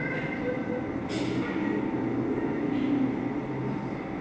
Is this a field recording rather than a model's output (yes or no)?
yes